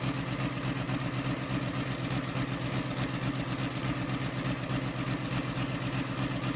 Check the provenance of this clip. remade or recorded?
recorded